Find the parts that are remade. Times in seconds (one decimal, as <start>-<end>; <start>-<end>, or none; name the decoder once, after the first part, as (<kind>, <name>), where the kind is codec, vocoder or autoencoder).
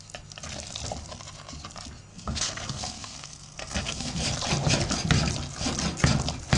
2.1-4.2 (codec, SNAC)